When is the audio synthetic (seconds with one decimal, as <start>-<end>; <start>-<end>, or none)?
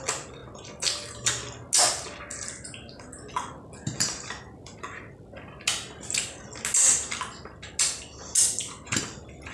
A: none